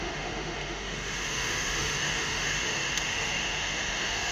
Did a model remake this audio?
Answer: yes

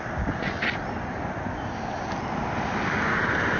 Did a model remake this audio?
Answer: no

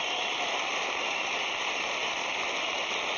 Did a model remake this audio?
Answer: no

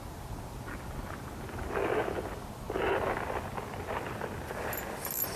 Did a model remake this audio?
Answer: no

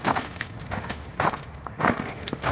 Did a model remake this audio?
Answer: yes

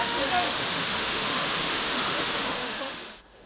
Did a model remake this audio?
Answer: yes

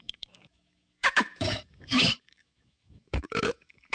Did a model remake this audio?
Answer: yes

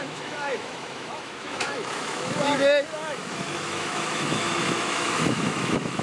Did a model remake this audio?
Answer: yes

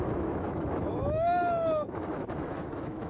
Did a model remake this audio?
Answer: yes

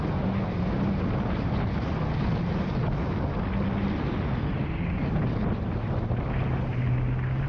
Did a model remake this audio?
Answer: no